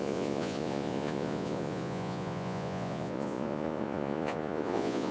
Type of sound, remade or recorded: remade